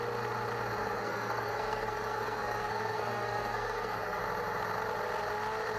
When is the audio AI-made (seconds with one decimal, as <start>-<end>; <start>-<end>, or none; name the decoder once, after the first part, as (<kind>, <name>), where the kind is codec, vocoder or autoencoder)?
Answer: 0.8-4.2 (codec, SNAC)